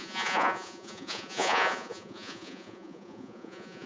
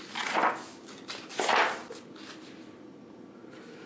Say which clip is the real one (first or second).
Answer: second